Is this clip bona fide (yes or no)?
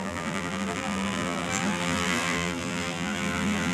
no